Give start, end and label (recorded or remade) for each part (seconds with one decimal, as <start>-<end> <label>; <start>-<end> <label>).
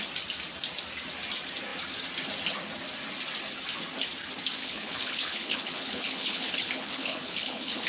0.0-4.6 recorded; 4.6-7.9 remade